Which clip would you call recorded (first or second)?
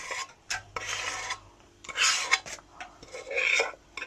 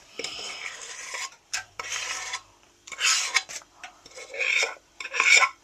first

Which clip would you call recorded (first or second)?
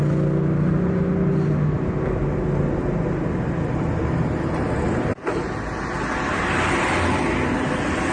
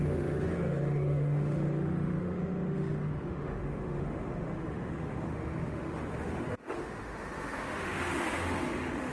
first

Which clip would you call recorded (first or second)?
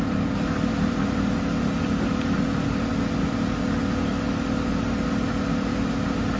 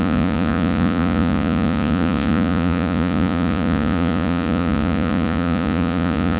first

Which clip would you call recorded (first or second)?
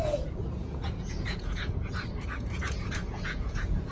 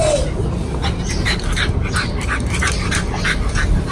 second